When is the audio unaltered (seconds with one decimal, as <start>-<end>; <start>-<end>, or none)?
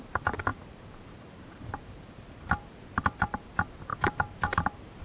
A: 0.0-0.5; 3.5-3.9